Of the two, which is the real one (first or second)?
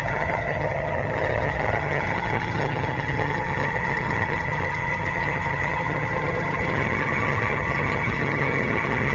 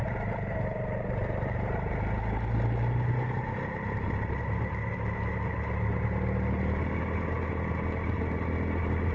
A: second